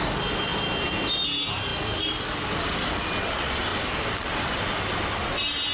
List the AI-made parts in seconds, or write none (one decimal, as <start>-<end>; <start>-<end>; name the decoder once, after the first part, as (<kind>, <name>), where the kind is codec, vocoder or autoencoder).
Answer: 0.5-1.1 (vocoder, BigVGAN v2); 3.7-5.7